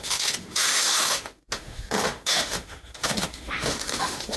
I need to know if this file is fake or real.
fake